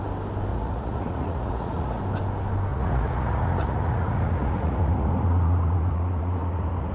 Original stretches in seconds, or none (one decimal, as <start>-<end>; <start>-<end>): 0.0-0.5; 2.0-2.7